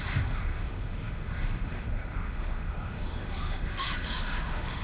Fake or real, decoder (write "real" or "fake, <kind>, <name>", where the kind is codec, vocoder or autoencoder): fake, autoencoder, DAC-VAE